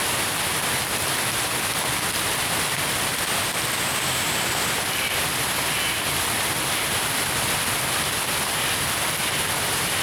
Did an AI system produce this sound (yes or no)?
no